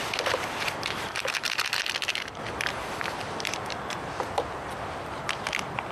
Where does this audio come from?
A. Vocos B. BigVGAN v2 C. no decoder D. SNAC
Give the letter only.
C